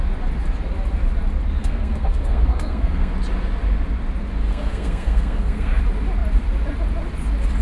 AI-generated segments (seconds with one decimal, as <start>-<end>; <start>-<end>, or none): 1.6-3.1; 4.5-5.8

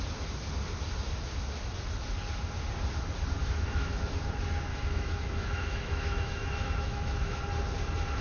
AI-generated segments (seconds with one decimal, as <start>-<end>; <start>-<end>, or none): 3.4-4.1; 4.7-7.4

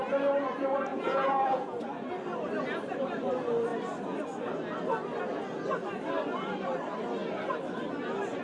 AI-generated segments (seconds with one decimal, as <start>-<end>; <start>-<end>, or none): 0.9-1.8

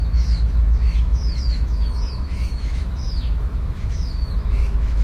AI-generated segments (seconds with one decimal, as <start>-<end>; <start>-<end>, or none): 0.0-5.0

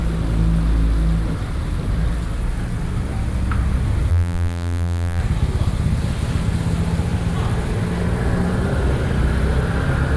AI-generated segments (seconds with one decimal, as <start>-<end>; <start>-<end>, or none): 4.1-5.2

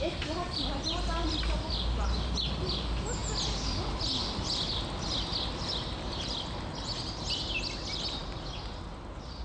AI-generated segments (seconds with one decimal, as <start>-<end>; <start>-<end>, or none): none

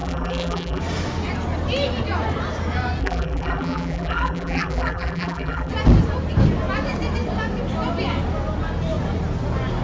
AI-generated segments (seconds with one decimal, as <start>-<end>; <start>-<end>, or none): 0.0-0.8; 3.0-5.7